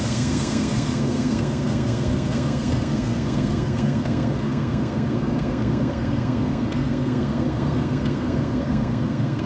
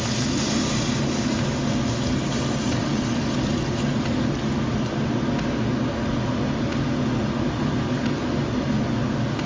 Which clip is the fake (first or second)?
first